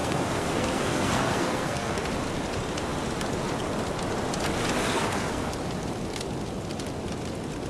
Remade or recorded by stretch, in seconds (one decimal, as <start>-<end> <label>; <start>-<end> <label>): 0.0-2.0 remade; 2.0-4.8 recorded; 4.8-5.5 remade; 5.5-7.7 recorded